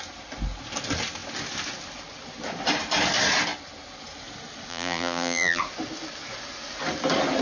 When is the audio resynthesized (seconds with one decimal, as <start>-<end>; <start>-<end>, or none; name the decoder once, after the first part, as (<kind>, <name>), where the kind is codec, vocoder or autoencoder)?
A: 4.7-5.6 (vocoder, BigVGAN v2)